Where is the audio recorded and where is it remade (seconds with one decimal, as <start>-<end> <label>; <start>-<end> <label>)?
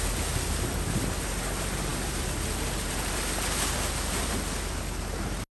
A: 0.0-5.5 recorded